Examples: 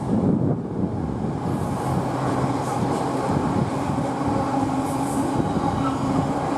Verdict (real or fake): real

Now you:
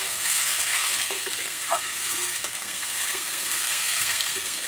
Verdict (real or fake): fake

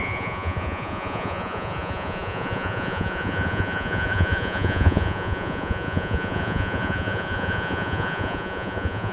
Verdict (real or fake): fake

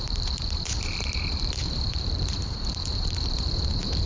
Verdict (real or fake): fake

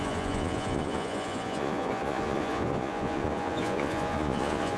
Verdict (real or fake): fake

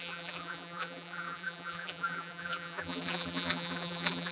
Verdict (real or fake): fake